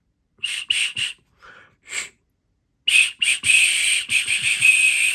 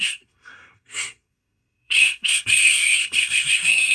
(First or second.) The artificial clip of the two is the second